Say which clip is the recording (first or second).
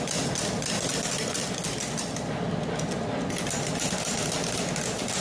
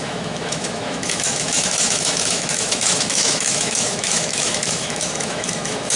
first